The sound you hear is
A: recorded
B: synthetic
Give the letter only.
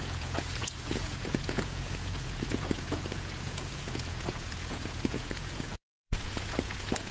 B